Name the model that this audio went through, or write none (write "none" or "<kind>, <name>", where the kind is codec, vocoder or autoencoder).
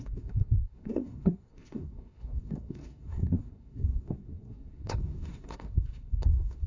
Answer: codec, SNAC